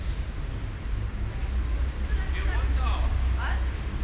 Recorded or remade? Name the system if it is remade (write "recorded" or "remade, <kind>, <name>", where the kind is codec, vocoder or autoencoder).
recorded